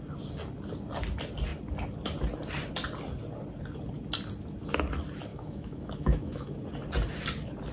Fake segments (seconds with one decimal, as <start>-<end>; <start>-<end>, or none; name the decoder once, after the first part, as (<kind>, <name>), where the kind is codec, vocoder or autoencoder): 5.3-6.6 (autoencoder, DAC-VAE)